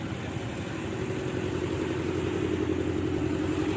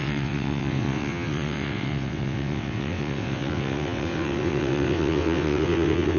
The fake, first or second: second